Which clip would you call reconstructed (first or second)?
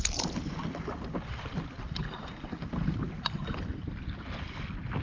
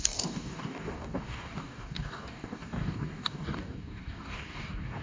second